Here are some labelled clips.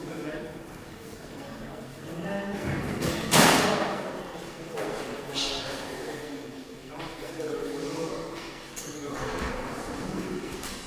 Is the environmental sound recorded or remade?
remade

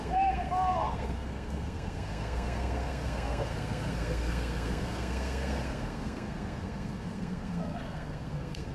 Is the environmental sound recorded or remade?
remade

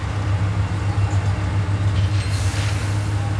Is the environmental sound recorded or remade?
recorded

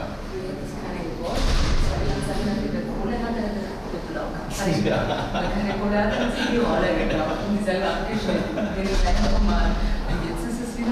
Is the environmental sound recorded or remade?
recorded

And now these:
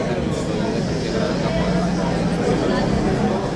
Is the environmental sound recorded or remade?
recorded